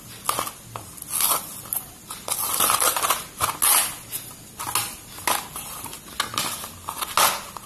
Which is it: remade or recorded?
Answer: recorded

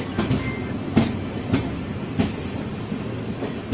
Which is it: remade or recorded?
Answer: recorded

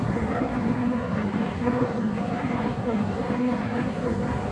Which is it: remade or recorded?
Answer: remade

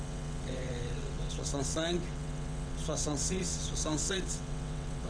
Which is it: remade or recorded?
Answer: remade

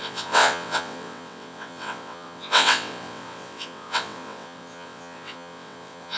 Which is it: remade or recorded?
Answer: remade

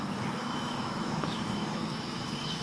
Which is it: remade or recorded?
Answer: remade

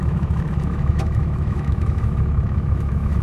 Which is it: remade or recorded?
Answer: remade